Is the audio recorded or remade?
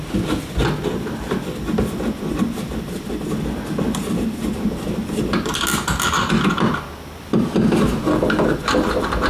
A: recorded